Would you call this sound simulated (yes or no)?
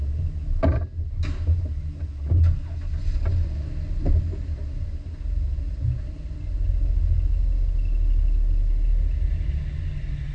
no